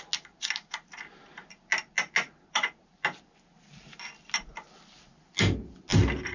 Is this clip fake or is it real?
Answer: real